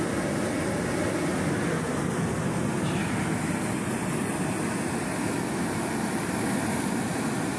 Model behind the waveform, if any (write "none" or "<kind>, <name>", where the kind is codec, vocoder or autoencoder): none